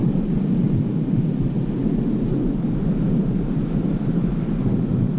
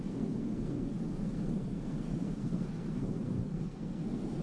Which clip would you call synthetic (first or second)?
second